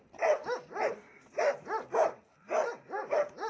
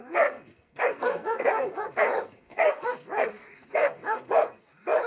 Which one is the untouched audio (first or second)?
first